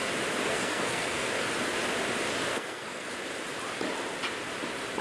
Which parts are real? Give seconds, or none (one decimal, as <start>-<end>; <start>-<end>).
0.0-0.5; 1.3-2.5; 3.1-5.0